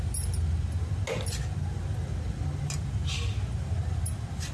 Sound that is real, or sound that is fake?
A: real